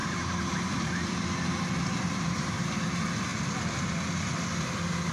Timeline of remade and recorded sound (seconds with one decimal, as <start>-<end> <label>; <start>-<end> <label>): 0.0-2.7 remade; 2.7-5.1 recorded